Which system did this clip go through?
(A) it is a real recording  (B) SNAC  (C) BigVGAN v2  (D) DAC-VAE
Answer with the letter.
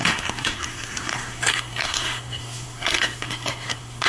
B